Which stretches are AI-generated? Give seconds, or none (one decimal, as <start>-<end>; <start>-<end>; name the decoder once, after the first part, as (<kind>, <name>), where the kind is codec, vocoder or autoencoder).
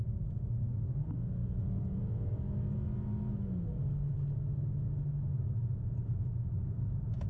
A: 5.3-6.3 (vocoder, BigVGAN v2)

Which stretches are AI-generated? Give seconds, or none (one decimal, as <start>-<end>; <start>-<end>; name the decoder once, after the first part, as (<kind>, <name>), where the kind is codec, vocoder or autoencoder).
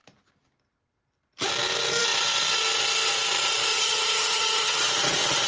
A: 3.7-4.9 (vocoder, HiFi-GAN)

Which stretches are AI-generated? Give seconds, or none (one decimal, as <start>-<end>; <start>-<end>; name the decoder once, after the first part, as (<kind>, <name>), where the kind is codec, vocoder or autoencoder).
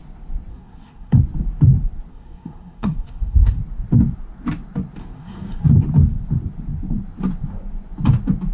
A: 0.5-1.2 (codec, SNAC); 2.1-3.6; 5.0-5.7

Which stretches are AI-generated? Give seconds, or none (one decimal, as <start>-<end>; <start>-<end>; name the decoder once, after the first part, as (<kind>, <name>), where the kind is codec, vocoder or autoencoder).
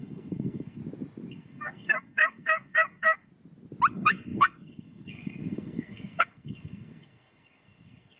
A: 0.0-0.8 (codec, SNAC); 1.3-3.3; 3.9-8.2